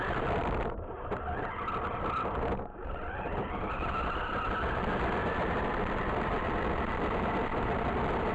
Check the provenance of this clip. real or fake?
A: real